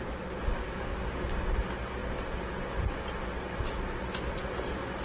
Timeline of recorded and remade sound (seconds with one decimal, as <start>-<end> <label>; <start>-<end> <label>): 0.0-0.6 recorded; 0.6-1.4 remade; 1.4-5.0 recorded